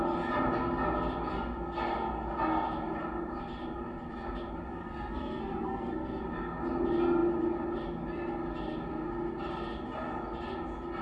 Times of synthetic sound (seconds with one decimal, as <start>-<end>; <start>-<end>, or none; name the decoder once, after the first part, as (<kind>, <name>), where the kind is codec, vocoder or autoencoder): 4.7-6.2 (codec, SNAC)

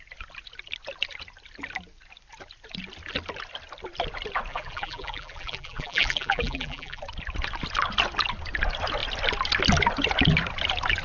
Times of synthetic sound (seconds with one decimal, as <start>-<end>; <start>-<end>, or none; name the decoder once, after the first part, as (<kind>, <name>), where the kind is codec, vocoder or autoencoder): 4.5-7.0 (vocoder, BigVGAN v2)

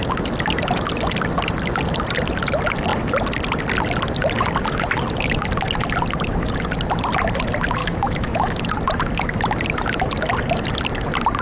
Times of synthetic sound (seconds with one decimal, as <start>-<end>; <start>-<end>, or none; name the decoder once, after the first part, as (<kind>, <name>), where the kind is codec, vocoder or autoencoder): 7.8-8.6 (autoencoder, DAC-VAE)

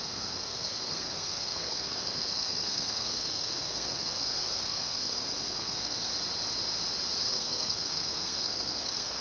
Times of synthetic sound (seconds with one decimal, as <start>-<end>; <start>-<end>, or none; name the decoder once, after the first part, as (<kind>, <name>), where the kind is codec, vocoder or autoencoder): 0.0-6.1 (codec, SNAC); 7.3-9.2